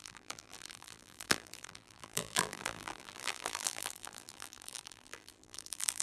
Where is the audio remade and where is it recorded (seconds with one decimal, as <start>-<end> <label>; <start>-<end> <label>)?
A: 0.0-6.0 remade